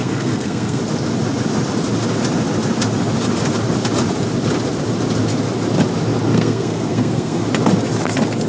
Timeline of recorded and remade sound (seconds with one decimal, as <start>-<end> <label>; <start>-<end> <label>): 0.0-0.8 remade; 0.8-6.3 recorded; 6.3-7.5 remade; 7.5-8.5 recorded